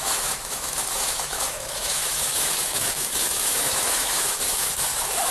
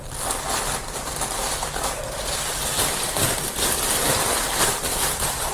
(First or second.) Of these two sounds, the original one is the second